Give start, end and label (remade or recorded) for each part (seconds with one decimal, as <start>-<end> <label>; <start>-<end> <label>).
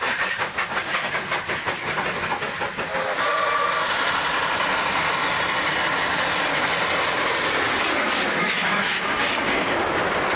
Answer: 0.0-8.3 recorded; 8.3-9.8 remade; 9.8-10.4 recorded